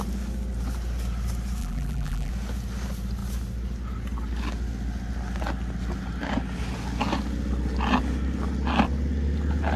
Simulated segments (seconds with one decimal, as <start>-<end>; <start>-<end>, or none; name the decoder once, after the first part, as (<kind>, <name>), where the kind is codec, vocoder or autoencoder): 1.6-2.3 (vocoder, BigVGAN v2)